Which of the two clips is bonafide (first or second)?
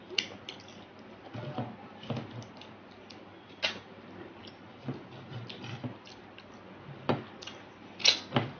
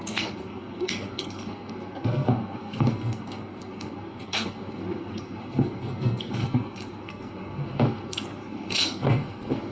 first